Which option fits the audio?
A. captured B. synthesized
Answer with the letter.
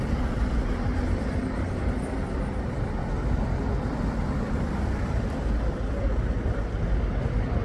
A